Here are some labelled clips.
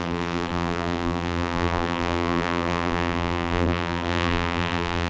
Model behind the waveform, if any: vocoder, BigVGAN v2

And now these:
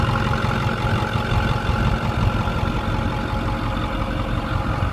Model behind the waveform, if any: none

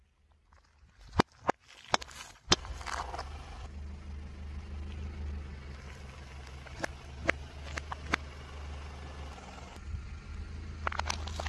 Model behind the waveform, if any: none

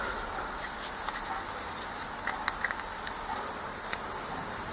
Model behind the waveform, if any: none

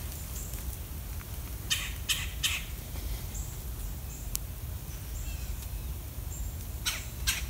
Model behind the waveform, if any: none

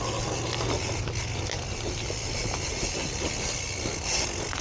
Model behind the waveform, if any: none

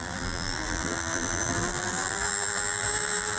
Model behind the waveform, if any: vocoder, BigVGAN v2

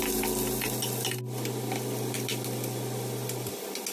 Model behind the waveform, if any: none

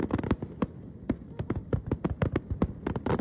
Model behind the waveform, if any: vocoder, BigVGAN v2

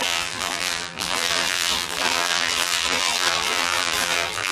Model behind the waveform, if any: vocoder, BigVGAN v2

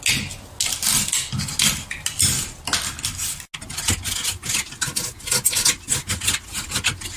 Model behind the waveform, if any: none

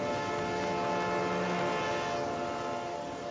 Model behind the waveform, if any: none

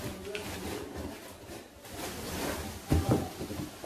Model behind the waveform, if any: none